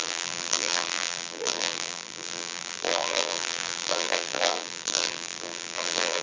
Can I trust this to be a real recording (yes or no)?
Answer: no